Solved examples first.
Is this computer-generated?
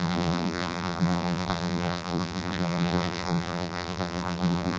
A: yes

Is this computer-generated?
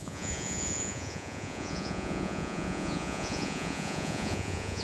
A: yes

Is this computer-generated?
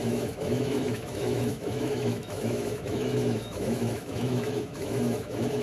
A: yes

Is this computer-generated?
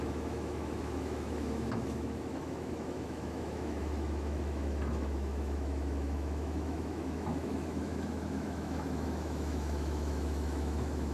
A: yes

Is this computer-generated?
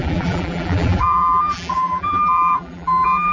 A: yes